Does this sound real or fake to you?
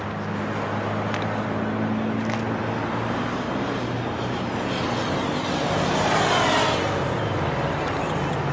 real